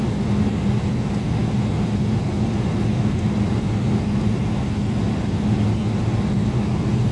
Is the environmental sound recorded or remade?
recorded